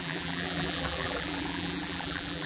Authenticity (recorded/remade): remade